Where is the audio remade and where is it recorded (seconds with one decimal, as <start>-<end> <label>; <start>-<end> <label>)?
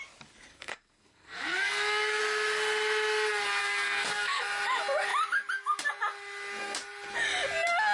0.0-0.5 recorded; 0.5-2.2 remade; 2.2-3.6 recorded; 3.6-4.4 remade; 4.4-7.9 recorded